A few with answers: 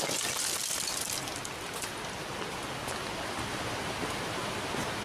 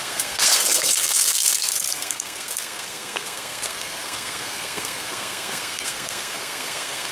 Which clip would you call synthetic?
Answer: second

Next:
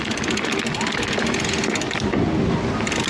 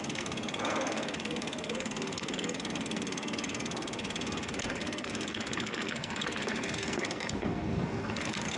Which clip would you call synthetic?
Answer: second